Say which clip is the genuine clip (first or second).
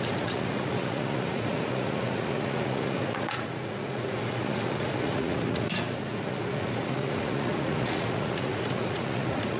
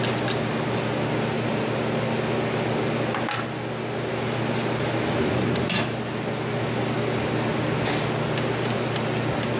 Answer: second